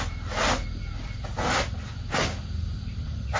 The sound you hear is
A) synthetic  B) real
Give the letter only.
B